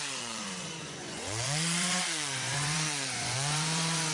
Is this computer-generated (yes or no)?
yes